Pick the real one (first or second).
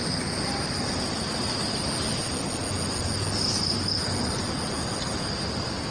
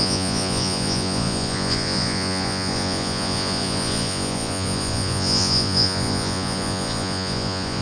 first